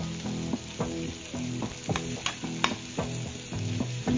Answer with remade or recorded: recorded